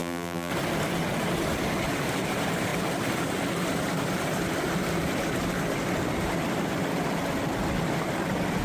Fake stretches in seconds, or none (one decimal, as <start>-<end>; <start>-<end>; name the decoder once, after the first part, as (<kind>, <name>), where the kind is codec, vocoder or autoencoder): 0.0-0.5 (vocoder, BigVGAN v2)